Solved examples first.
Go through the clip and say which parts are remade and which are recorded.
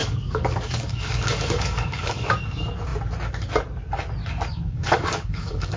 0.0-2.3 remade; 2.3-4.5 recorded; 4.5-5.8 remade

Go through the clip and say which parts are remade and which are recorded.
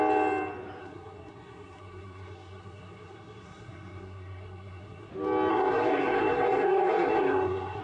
0.0-0.8 recorded; 0.8-5.1 remade; 5.1-5.5 recorded; 5.5-7.8 remade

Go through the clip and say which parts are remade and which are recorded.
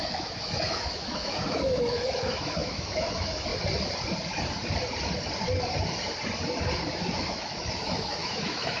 0.0-3.5 remade; 3.5-6.9 recorded; 6.9-8.8 remade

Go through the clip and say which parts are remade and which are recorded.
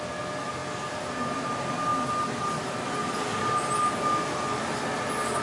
0.0-5.4 recorded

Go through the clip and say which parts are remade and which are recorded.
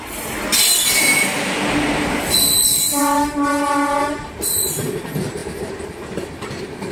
0.0-6.9 recorded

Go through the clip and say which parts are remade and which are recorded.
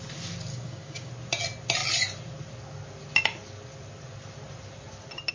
0.0-0.5 recorded; 0.5-1.1 remade; 1.1-5.3 recorded